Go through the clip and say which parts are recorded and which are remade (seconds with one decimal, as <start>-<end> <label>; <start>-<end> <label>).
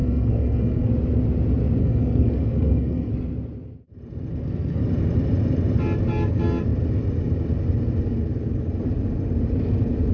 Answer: 0.0-0.9 remade; 0.9-1.8 recorded; 1.8-3.1 remade; 3.1-4.3 recorded; 4.3-4.8 remade; 4.8-10.1 recorded